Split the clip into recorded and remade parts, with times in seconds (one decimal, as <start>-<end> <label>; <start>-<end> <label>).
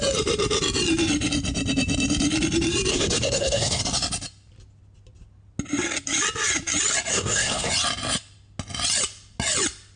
0.0-2.9 recorded; 2.9-3.8 remade; 3.8-7.1 recorded; 7.1-7.7 remade; 7.7-10.0 recorded